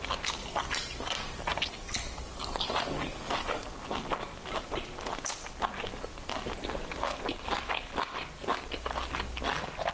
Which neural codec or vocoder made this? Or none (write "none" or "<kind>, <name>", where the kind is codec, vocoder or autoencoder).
none